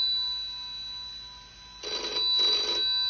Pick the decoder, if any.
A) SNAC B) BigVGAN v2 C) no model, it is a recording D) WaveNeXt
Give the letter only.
C